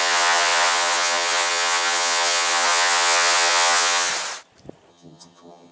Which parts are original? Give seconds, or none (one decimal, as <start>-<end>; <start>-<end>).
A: 4.1-4.9